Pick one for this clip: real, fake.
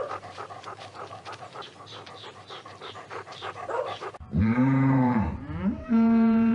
fake